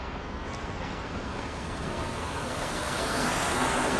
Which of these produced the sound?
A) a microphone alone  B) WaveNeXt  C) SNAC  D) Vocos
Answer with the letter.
C